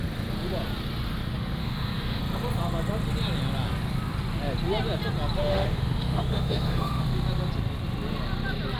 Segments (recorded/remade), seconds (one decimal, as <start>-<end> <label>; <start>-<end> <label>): 0.0-1.6 recorded; 1.6-2.2 remade; 2.2-5.4 recorded; 5.4-7.0 remade; 7.0-8.8 recorded